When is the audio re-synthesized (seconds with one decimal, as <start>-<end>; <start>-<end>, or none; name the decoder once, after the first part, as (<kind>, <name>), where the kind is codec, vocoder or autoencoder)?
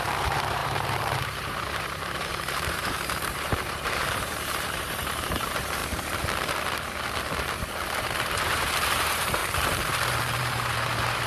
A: 0.0-5.8 (vocoder, BigVGAN v2); 8.0-9.4; 10.4-11.3